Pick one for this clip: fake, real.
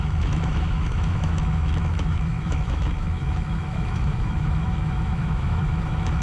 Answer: fake